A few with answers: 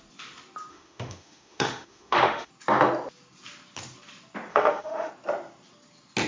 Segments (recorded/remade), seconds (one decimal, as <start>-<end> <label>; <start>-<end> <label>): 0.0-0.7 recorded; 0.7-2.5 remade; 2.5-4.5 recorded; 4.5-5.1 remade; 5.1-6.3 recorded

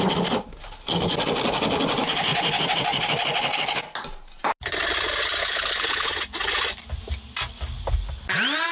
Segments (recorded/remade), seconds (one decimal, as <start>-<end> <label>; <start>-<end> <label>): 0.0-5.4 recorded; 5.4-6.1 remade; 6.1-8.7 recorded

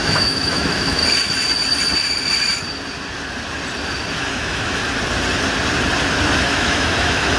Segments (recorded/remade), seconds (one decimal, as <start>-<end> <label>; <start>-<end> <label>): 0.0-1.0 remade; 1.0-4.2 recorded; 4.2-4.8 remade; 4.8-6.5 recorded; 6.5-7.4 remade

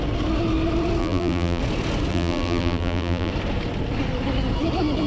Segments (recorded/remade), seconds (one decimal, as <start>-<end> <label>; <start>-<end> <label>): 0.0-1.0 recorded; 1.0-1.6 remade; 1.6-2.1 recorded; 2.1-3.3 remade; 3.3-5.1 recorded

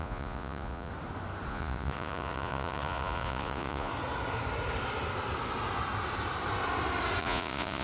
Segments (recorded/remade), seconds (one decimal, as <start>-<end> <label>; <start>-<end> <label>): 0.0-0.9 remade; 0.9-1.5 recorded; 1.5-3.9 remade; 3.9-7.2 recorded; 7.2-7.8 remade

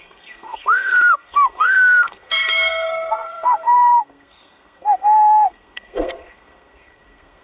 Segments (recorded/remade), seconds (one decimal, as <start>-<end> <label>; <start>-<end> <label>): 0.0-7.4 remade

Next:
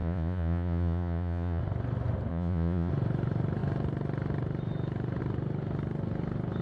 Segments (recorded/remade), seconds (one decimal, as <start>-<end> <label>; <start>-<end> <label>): 0.0-1.6 remade; 1.6-2.3 recorded; 2.3-2.9 remade; 2.9-6.6 recorded